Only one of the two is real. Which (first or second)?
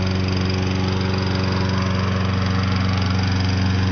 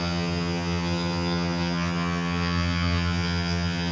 first